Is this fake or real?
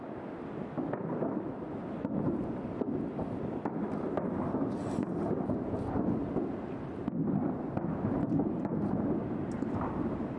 real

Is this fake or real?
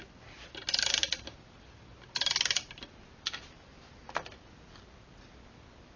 real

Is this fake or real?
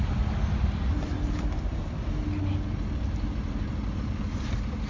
real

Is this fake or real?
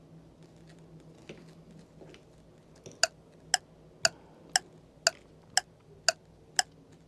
real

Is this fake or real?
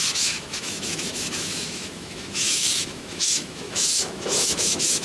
fake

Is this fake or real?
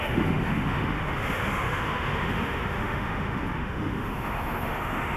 fake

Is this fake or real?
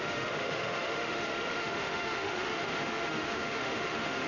fake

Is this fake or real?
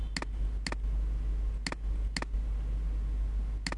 real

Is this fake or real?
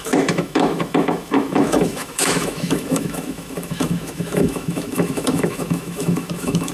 fake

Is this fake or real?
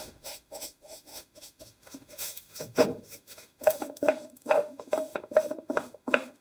fake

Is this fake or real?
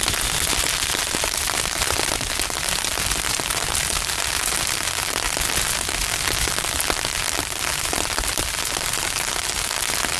real